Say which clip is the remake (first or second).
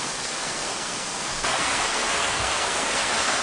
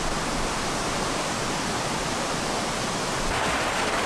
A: first